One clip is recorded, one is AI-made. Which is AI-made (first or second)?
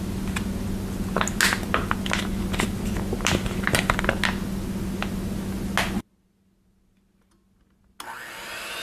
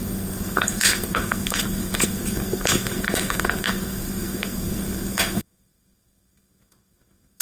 second